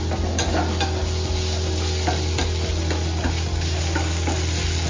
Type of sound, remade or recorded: recorded